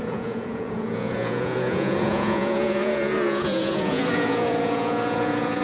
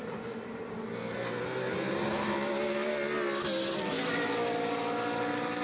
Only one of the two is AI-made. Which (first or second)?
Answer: first